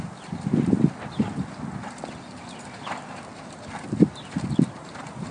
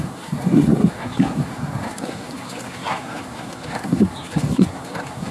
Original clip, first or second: first